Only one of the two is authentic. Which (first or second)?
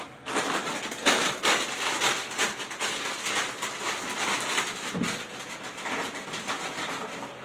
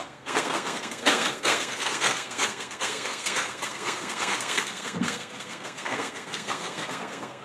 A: first